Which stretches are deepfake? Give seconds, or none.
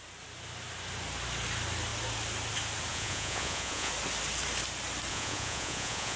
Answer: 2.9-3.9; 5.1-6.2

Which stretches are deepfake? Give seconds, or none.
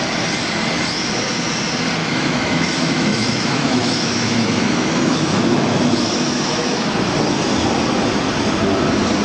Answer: 2.0-6.9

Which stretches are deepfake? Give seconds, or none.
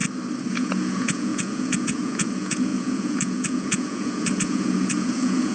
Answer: 0.5-5.5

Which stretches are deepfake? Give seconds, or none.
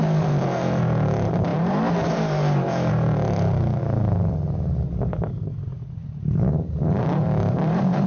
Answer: 0.0-8.1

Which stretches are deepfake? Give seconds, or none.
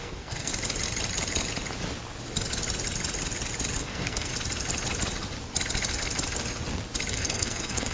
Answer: 0.0-0.5; 3.8-4.3; 7.1-7.9